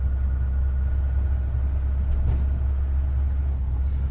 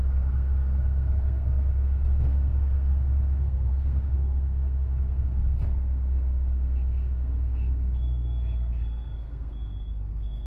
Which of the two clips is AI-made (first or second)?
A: second